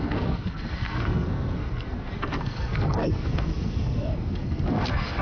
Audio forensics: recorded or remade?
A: remade